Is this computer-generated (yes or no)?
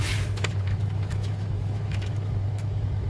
yes